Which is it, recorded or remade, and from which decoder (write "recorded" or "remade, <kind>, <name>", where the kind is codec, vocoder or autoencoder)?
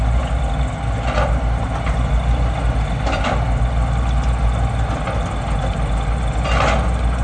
recorded